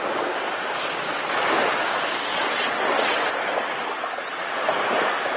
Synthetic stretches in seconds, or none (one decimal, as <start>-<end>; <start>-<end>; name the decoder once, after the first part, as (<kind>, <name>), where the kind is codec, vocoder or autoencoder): 2.3-3.2 (vocoder, WaveNeXt)